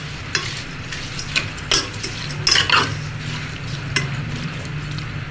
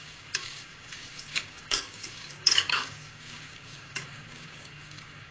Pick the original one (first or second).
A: first